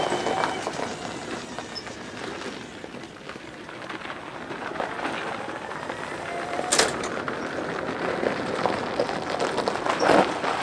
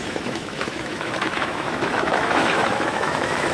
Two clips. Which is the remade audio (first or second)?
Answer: second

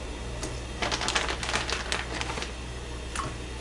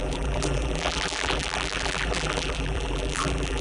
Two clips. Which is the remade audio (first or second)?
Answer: second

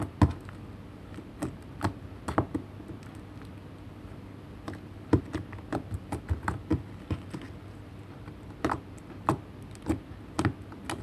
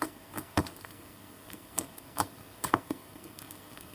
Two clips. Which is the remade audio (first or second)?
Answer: second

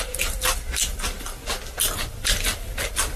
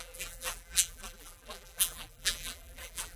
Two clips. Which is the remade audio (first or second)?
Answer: second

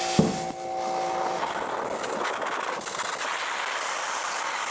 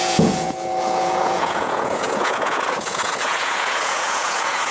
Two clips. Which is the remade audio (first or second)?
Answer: second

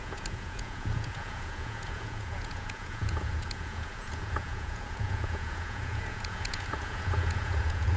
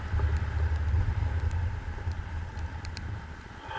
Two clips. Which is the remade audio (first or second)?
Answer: first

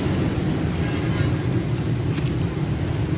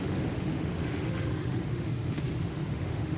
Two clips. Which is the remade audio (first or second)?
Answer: second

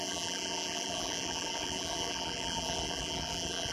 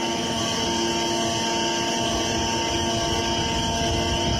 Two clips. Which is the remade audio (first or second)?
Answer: first